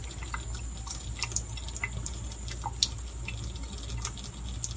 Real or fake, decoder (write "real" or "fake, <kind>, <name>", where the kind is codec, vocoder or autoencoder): real